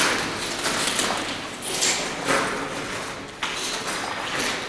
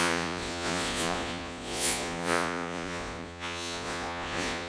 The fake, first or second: second